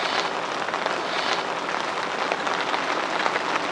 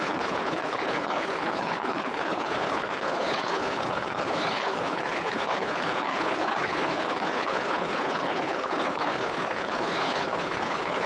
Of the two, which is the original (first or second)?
first